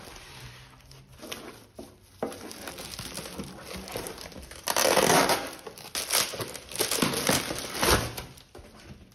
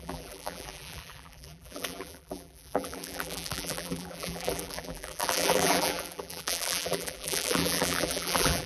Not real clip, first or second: second